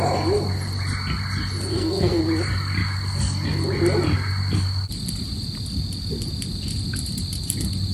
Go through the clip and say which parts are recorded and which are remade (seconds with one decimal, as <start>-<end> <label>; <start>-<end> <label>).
0.0-1.7 recorded; 1.7-2.2 remade; 2.2-7.9 recorded